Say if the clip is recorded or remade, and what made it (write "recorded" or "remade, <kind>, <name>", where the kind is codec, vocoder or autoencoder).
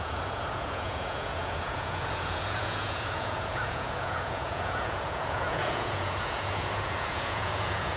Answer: remade, vocoder, Vocos